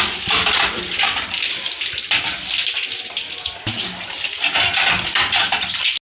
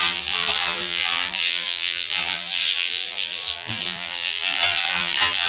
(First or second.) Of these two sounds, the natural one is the first